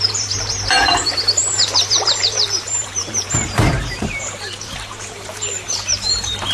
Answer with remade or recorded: remade